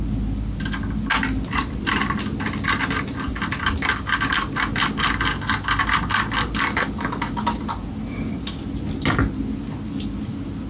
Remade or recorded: recorded